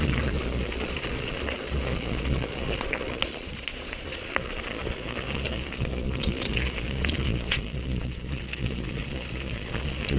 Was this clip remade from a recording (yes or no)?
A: yes